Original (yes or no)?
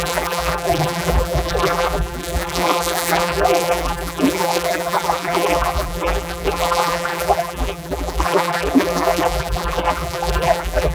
no